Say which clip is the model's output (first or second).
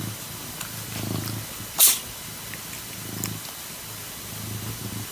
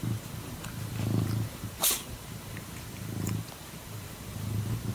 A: second